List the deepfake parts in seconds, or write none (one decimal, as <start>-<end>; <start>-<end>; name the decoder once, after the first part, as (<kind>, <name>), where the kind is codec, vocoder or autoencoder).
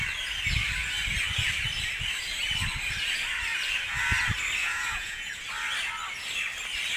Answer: 4.6-5.4 (vocoder, Vocos)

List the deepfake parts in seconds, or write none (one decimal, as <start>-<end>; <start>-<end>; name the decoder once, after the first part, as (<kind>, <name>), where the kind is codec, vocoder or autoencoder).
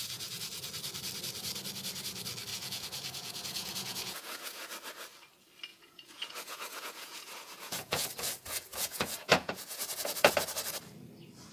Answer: 0.0-0.7 (vocoder, Vocos); 2.5-4.7; 5.7-10.3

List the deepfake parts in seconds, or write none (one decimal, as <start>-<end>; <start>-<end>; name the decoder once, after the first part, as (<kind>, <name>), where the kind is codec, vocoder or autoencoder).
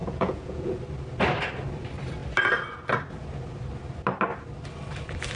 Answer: 0.0-0.8 (vocoder, Vocos)